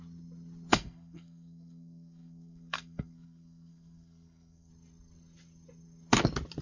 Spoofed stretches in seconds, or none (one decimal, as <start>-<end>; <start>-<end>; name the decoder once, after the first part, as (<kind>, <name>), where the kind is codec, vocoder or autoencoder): 0.7-4.7 (codec, SNAC)